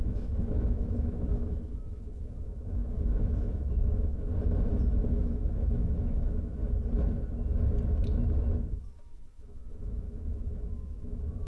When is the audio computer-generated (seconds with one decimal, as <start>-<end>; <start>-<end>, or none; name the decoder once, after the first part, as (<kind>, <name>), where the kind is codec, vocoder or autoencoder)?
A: 0.0-4.3 (autoencoder, DAC-VAE); 5.1-6.6; 8.7-11.5